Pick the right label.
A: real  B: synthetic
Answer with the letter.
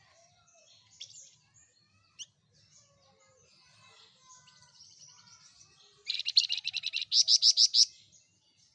A